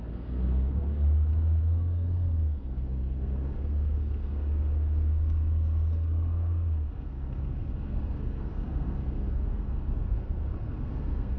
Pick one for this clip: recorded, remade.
remade